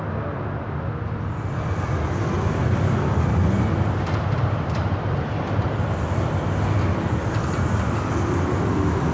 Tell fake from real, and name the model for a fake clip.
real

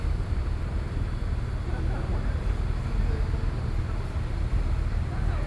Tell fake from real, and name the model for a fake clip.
real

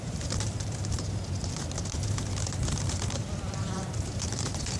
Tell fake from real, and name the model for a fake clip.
fake, vocoder, BigVGAN v2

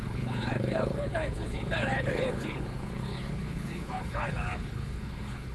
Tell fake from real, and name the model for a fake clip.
fake, codec, HILCodec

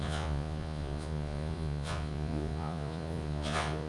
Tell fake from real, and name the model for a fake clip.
fake, vocoder, Vocos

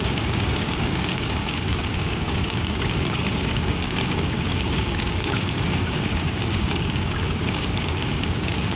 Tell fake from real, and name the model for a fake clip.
fake, codec, DAC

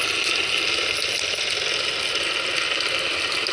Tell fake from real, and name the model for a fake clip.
real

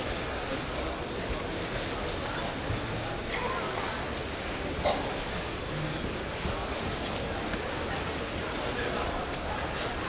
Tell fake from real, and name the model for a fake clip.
real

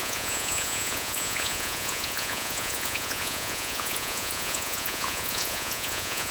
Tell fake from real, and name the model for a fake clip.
fake, vocoder, Vocos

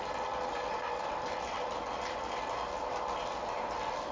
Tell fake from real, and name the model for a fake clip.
real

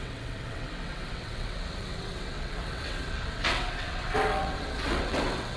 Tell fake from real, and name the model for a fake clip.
fake, vocoder, WaveNeXt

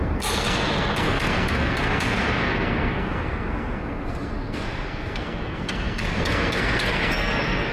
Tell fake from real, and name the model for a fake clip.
fake, codec, SNAC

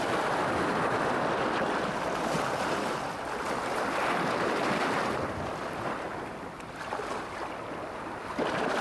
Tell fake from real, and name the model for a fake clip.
real